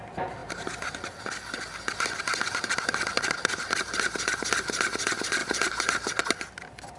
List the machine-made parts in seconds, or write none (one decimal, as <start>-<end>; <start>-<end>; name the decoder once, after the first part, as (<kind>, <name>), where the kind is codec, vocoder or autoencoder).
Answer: 5.4-6.2 (vocoder, BigVGAN v2)

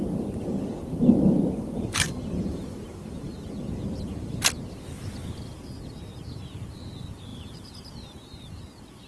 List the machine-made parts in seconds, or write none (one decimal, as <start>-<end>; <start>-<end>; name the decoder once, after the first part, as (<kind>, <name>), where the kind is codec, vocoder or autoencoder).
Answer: 0.0-4.4 (vocoder, BigVGAN v2); 7.3-8.6

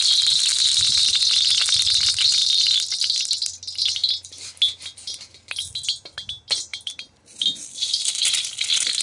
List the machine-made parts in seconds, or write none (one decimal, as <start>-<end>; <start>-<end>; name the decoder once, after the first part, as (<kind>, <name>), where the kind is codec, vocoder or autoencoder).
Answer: 2.4-3.2 (vocoder, BigVGAN v2); 6.7-8.4

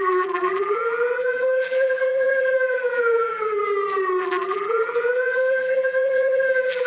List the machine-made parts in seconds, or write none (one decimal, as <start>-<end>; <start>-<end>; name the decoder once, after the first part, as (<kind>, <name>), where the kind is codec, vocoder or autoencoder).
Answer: 0.0-3.6 (vocoder, BigVGAN v2); 4.2-6.9

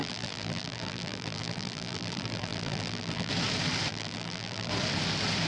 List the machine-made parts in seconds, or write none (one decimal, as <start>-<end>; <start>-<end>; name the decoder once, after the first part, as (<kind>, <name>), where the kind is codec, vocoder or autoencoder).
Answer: 0.0-3.3 (vocoder, BigVGAN v2); 3.9-4.7

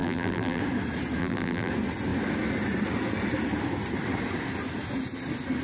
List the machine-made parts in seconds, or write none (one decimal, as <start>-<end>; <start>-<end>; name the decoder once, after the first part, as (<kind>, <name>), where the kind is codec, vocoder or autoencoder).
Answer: 0.0-0.6 (vocoder, BigVGAN v2); 1.2-1.7